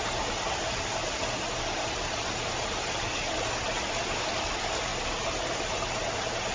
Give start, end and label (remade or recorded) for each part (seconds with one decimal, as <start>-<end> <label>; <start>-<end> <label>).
0.0-6.5 recorded